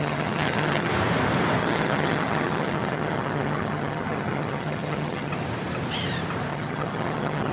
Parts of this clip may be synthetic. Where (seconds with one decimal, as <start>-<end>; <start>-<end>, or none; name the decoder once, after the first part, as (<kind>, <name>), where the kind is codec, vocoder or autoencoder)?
0.0-0.9 (vocoder, HiFi-GAN); 1.6-5.3; 6.5-7.5